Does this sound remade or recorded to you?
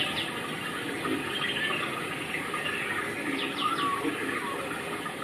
recorded